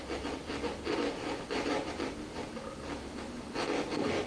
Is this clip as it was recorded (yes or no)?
yes